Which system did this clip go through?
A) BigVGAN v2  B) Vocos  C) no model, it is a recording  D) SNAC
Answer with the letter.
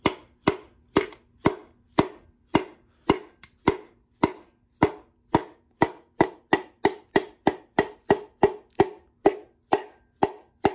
C